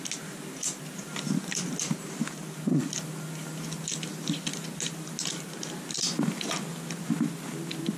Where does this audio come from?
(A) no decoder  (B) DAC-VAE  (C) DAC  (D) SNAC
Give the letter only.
A